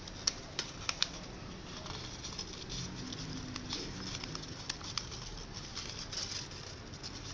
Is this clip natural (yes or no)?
yes